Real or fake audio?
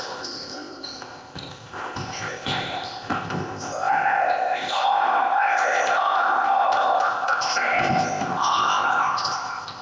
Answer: fake